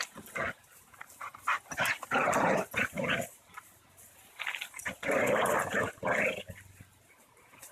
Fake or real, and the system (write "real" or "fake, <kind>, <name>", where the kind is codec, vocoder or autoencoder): real